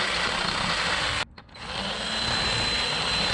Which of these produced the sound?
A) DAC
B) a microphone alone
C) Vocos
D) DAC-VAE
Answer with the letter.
B